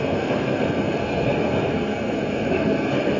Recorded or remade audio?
remade